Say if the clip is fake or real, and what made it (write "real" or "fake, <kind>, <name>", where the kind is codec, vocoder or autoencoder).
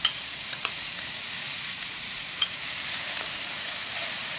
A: fake, vocoder, Vocos